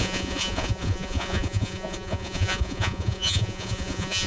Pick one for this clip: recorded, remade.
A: remade